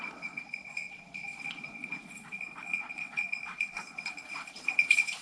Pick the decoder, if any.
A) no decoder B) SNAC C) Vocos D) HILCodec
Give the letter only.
C